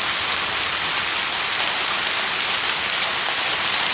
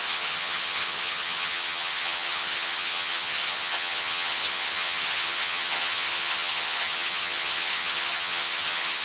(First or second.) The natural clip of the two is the first